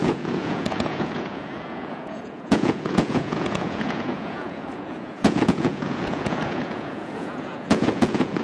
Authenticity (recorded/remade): remade